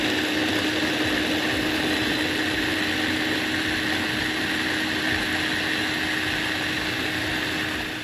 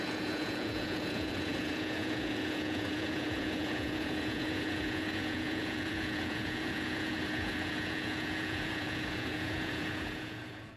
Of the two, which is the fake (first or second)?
second